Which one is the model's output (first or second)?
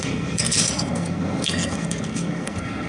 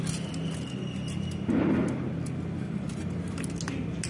first